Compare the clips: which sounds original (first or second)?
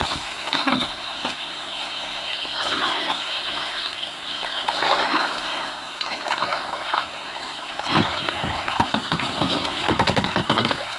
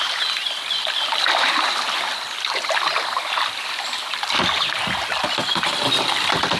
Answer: second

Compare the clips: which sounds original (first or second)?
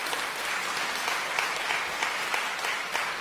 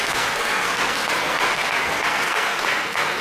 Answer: first